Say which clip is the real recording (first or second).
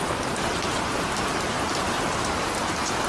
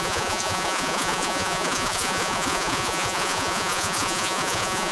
first